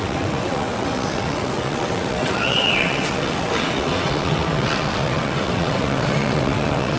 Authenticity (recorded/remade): remade